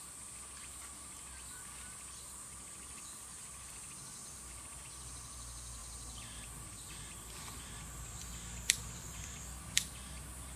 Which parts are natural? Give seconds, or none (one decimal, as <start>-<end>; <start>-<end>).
0.0-4.2; 4.8-10.6